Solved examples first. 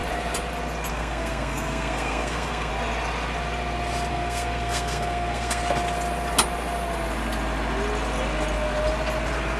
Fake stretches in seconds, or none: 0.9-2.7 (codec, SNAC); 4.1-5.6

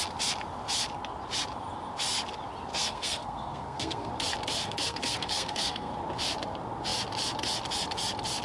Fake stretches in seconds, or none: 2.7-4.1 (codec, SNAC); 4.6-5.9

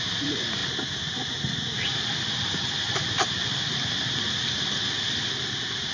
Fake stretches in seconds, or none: none

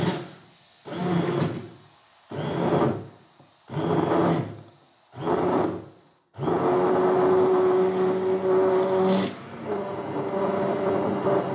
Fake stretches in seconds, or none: none

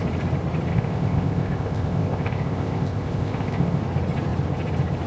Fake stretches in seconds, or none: 0.7-3.8 (codec, ZipCodec)

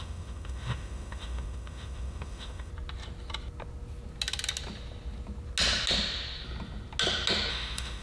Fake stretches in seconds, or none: 0.0-2.7 (autoencoder, DAC-VAE); 7.5-8.0